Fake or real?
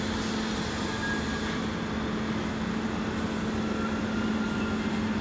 real